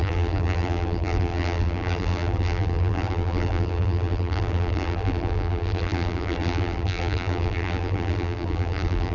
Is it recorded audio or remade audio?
remade